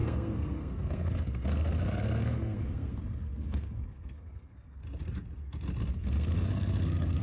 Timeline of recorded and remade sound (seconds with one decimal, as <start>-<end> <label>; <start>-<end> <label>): 0.0-4.8 remade; 4.8-5.9 recorded; 5.9-7.2 remade